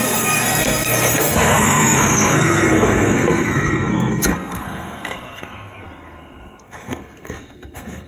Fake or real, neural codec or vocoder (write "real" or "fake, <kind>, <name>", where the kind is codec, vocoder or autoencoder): fake, codec, SNAC